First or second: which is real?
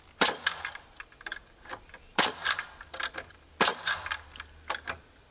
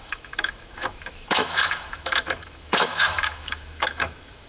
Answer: first